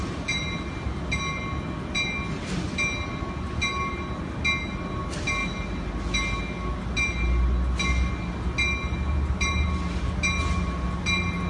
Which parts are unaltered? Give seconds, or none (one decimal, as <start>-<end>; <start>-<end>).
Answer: 0.0-11.5